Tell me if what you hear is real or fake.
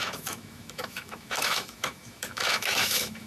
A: fake